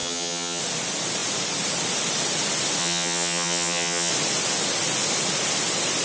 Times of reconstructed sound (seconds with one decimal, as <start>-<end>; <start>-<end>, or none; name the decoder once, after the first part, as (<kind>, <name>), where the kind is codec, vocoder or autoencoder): 0.0-0.6 (vocoder, HiFi-GAN); 2.8-4.1